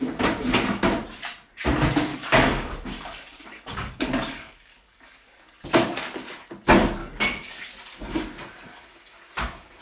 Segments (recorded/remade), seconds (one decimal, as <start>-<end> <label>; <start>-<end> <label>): 0.0-2.1 recorded; 2.1-5.5 remade; 5.5-7.0 recorded; 7.0-7.7 remade; 7.7-9.8 recorded